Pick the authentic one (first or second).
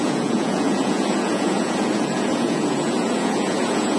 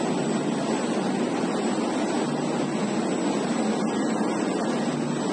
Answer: second